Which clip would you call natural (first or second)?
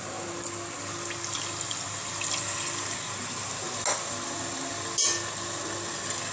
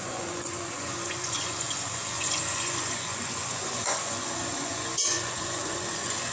first